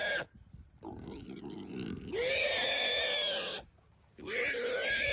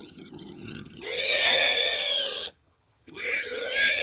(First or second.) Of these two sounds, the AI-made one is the second